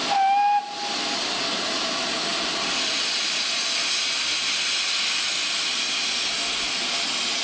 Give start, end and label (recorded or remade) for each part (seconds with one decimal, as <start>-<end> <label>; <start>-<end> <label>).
0.0-7.4 recorded

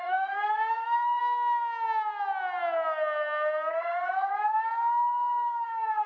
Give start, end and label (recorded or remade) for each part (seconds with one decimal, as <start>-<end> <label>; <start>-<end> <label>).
0.0-1.2 remade; 1.2-3.7 recorded; 3.7-6.1 remade

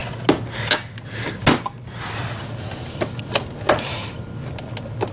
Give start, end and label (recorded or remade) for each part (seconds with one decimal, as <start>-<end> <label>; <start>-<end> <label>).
0.0-5.1 recorded

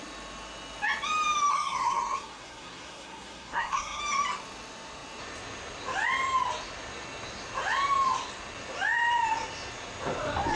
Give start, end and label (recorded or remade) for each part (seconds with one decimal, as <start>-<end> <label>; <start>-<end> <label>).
0.0-1.5 recorded; 1.5-4.0 remade; 4.0-10.6 recorded

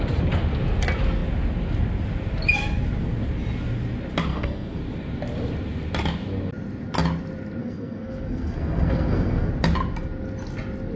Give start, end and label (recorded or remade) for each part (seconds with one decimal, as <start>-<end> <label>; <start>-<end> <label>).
0.0-4.3 recorded; 4.3-4.8 remade; 4.8-7.6 recorded; 7.6-9.5 remade; 9.5-11.0 recorded

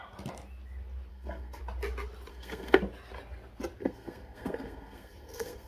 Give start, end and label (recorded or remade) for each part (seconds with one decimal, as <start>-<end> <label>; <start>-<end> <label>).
0.0-1.1 recorded; 1.1-1.6 remade; 1.6-2.3 recorded; 2.3-2.8 remade; 2.8-3.8 recorded; 3.8-5.7 remade

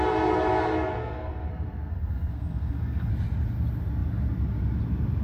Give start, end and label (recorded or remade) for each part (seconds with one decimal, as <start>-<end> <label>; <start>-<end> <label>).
0.0-1.0 recorded; 1.0-1.5 remade; 1.5-1.9 recorded; 1.9-3.1 remade; 3.1-5.2 recorded

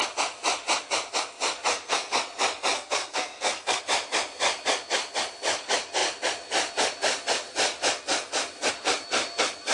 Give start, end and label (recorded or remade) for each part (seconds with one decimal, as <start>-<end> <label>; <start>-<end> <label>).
0.0-1.7 recorded; 1.7-2.2 remade; 2.2-2.7 recorded; 2.7-3.8 remade; 3.8-9.7 recorded